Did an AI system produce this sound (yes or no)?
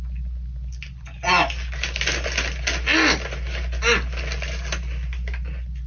no